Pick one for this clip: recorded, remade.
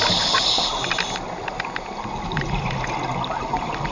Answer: recorded